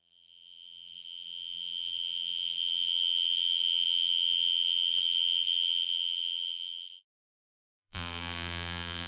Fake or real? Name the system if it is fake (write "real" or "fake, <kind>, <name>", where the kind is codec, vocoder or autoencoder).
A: fake, vocoder, BigVGAN v2